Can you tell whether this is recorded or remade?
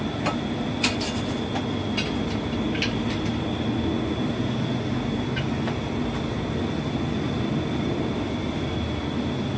recorded